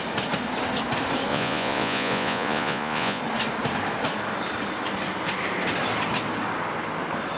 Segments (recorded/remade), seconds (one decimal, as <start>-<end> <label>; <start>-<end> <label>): 0.0-1.3 recorded; 1.3-3.2 remade; 3.2-7.4 recorded